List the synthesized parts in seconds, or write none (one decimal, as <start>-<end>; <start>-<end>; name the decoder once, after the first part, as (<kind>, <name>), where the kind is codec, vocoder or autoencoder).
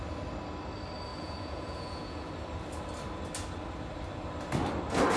1.1-2.3 (vocoder, Vocos)